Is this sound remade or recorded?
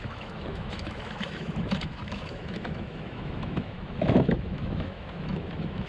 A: remade